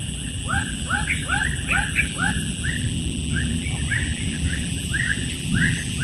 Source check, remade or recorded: remade